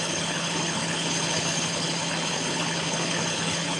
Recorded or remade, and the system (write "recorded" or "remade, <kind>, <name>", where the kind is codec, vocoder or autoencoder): remade, codec, HILCodec